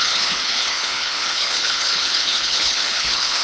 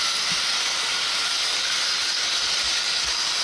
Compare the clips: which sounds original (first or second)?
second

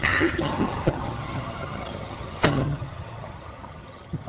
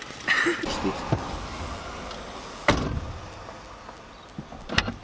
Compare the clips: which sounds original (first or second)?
second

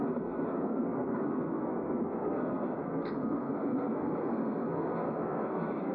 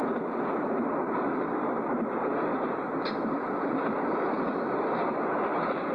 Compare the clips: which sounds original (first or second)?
second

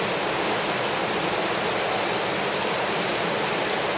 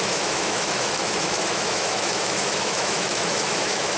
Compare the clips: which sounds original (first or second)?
first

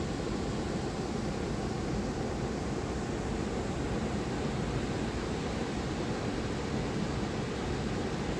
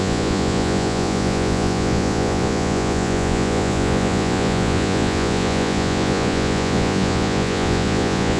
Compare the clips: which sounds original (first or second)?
first